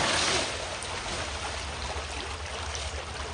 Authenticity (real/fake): real